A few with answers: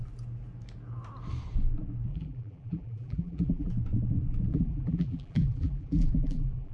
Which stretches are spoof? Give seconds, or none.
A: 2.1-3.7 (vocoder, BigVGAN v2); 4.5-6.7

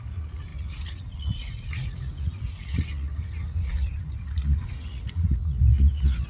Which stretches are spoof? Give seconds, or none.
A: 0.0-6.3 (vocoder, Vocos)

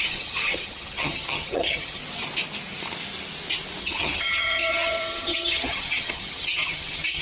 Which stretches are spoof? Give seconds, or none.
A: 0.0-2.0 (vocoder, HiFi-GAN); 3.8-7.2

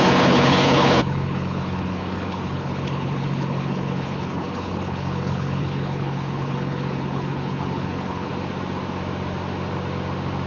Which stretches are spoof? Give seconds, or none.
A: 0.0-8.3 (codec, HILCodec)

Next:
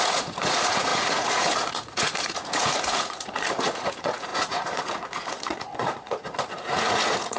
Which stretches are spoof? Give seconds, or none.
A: 0.0-7.4 (vocoder, Vocos)